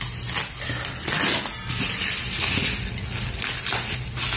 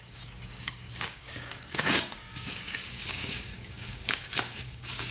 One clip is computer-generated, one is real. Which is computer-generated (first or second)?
second